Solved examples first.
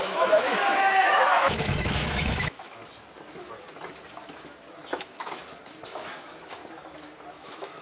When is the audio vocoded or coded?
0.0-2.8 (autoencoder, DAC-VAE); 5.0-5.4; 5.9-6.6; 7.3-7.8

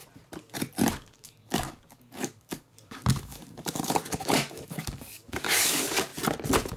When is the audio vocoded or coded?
0.9-6.1 (codec, DAC)

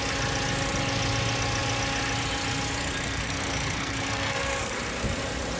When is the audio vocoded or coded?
2.8-4.7 (codec, SNAC)